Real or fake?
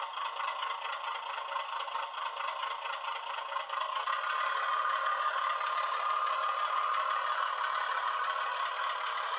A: real